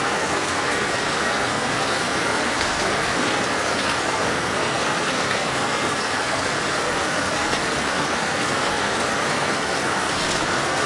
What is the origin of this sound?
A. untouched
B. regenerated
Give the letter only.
B